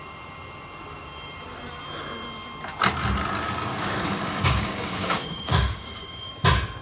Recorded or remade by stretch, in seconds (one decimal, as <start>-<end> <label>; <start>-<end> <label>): 0.0-3.7 recorded; 3.7-6.3 remade; 6.3-6.8 recorded